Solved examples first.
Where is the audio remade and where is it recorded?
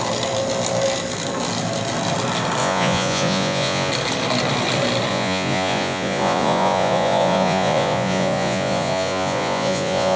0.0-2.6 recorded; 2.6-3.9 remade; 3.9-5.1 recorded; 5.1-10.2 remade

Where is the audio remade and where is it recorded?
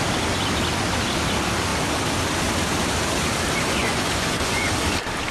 0.0-3.8 recorded; 3.8-4.7 remade; 4.7-5.3 recorded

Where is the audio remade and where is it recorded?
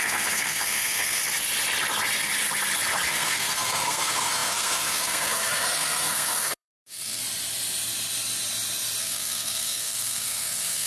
0.0-1.2 remade; 1.2-3.1 recorded; 3.1-7.2 remade; 7.2-9.0 recorded; 9.0-10.9 remade